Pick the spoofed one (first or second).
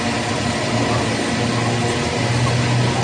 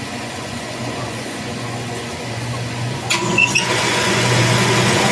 second